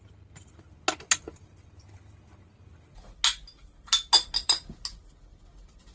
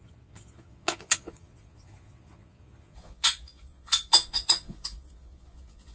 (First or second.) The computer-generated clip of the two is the second